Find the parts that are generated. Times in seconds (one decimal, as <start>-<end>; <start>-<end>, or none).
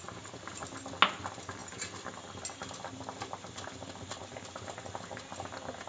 none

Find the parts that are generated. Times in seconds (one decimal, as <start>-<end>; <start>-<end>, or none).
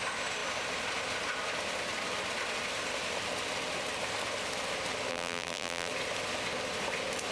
5.1-5.9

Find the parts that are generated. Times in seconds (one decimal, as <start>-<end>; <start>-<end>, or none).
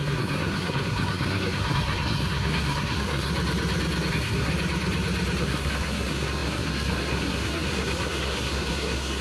0.0-3.3; 4.1-4.5; 5.4-9.2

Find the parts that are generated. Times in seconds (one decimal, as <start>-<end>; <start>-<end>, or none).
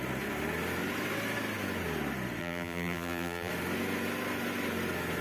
2.4-3.5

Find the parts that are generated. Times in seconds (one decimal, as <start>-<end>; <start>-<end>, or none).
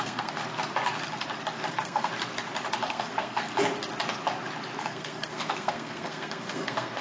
0.0-0.4; 1.7-2.1; 2.9-3.5; 4.8-7.0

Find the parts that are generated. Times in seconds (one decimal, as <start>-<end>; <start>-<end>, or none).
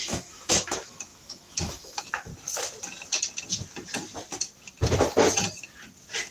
0.0-2.3